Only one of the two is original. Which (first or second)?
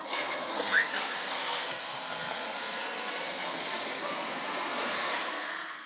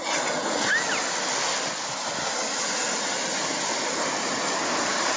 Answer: second